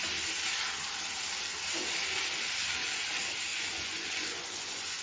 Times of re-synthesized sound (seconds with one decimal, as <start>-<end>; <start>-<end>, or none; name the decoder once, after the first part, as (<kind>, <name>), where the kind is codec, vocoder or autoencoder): 3.5-5.0 (vocoder, Vocos)